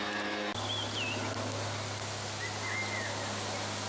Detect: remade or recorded recorded